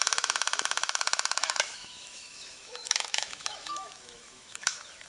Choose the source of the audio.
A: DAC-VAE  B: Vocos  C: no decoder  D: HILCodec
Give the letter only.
A